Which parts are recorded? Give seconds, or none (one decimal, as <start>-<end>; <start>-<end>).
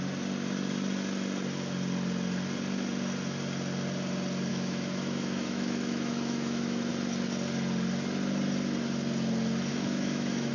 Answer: 0.0-4.5; 6.9-9.7